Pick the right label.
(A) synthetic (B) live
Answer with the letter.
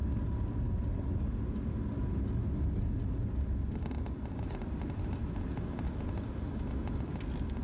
B